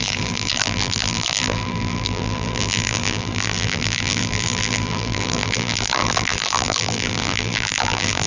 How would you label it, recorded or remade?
remade